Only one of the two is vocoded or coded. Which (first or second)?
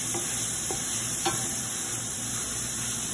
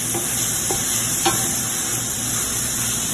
first